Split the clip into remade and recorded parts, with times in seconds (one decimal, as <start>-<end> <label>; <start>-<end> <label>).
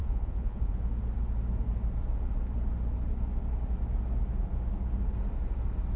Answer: 0.0-0.8 remade; 0.8-6.0 recorded